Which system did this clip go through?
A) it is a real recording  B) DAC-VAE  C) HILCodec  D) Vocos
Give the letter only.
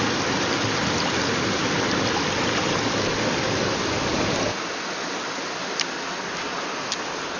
A